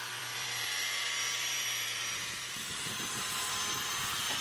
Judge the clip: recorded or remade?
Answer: remade